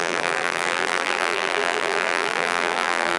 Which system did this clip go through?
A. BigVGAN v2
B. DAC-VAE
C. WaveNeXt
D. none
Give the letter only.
A